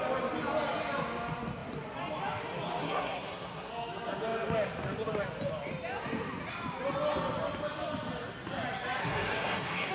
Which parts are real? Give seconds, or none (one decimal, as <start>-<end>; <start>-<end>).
0.0-2.8; 3.7-9.0